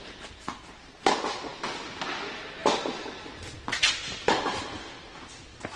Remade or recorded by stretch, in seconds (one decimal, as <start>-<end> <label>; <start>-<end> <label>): 0.0-5.8 recorded

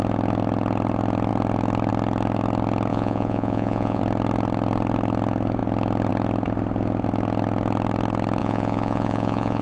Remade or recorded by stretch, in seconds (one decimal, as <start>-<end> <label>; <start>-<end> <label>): 0.0-2.9 recorded; 2.9-4.0 remade; 4.0-8.4 recorded; 8.4-9.6 remade

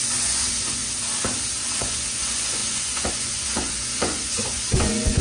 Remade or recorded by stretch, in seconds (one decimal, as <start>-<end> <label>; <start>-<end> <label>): 0.0-0.8 remade; 0.8-1.8 recorded; 1.8-5.2 remade